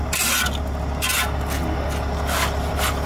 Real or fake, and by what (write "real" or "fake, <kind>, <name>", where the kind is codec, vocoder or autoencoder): real